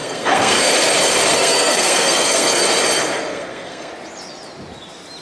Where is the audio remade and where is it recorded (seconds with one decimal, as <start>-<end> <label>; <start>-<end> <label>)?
0.0-0.7 remade; 0.7-1.3 recorded; 1.3-2.6 remade; 2.6-3.3 recorded; 3.3-3.9 remade; 3.9-5.2 recorded